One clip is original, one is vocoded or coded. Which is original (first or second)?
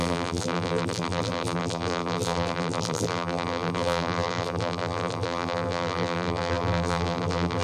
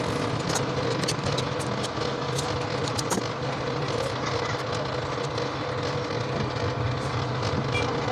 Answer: second